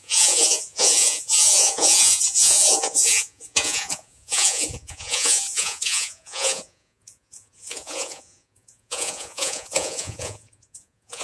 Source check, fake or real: fake